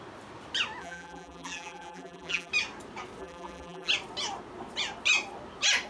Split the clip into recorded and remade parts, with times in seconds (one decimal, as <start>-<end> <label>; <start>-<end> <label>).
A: 0.0-0.8 recorded; 0.8-2.5 remade; 2.5-3.2 recorded; 3.2-3.9 remade; 3.9-5.9 recorded